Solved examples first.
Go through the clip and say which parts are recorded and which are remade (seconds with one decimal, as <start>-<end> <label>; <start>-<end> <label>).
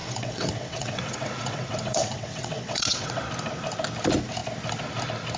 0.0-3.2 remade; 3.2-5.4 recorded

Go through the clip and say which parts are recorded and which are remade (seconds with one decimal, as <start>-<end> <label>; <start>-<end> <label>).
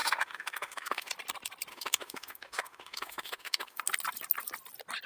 0.0-1.1 remade; 1.1-1.7 recorded; 1.7-3.8 remade; 3.8-5.1 recorded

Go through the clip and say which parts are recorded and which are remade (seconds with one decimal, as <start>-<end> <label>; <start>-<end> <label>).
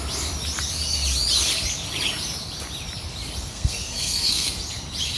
0.0-3.5 recorded; 3.5-4.5 remade; 4.5-5.2 recorded